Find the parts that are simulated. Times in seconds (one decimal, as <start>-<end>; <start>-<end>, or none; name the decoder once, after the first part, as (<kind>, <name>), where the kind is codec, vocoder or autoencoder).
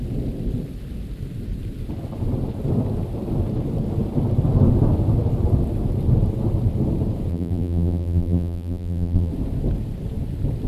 7.3-9.3 (vocoder, BigVGAN v2)